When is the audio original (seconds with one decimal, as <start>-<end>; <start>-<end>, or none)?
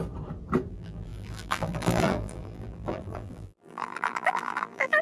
0.0-0.7